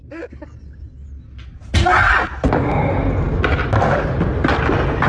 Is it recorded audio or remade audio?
recorded